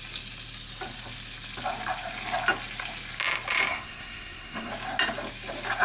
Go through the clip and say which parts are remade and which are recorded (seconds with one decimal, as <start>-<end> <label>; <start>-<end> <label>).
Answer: 0.0-3.7 recorded; 3.7-4.7 remade; 4.7-5.8 recorded